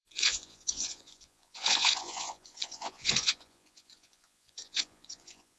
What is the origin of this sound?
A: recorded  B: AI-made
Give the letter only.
B